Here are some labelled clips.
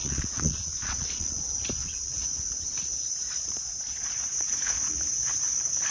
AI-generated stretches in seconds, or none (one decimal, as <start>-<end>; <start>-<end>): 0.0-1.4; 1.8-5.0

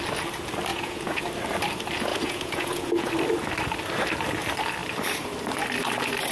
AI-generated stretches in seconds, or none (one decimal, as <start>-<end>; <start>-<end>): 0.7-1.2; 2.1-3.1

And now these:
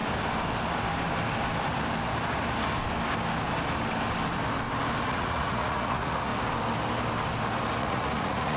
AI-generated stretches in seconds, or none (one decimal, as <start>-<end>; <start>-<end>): 5.0-6.3; 7.8-8.6

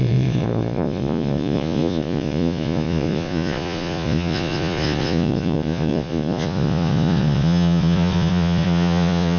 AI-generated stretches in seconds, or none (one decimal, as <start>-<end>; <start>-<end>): 0.0-9.4